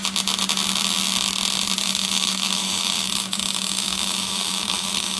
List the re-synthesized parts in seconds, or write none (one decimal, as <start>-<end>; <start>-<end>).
1.8-5.2